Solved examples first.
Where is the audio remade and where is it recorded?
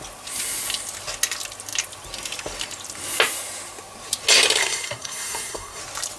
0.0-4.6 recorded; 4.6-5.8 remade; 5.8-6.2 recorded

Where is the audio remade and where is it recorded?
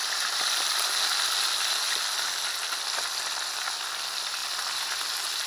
0.0-5.5 recorded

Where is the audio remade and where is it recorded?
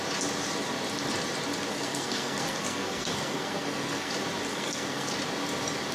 0.0-1.7 recorded; 1.7-4.1 remade; 4.1-4.5 recorded; 4.5-5.1 remade; 5.1-5.9 recorded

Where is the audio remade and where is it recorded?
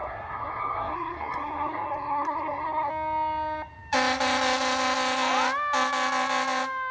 0.0-2.9 remade; 2.9-6.9 recorded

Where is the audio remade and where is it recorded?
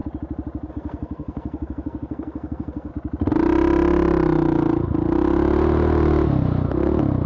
0.0-0.7 recorded; 0.7-2.9 remade; 2.9-7.3 recorded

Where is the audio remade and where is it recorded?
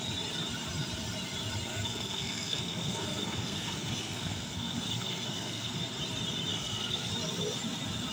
0.0-1.7 recorded; 1.7-5.8 remade; 5.8-6.5 recorded; 6.5-7.1 remade; 7.1-8.1 recorded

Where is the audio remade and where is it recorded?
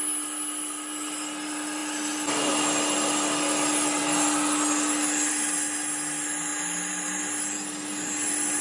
0.0-8.6 recorded